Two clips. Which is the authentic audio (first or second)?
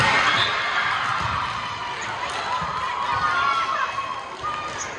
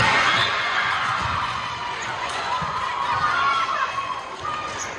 first